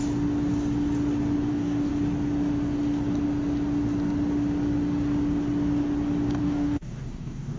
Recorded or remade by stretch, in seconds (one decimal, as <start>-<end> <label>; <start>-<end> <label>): 0.0-1.5 recorded; 1.5-1.9 remade; 1.9-6.4 recorded; 6.4-7.6 remade